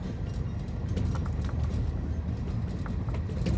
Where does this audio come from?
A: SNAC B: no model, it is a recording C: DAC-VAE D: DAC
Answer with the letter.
B